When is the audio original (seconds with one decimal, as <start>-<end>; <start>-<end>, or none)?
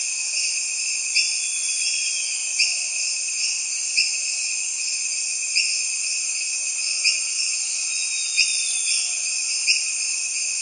0.0-4.7; 8.1-10.6